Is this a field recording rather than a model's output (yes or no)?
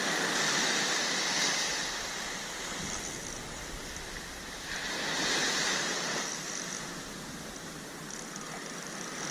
yes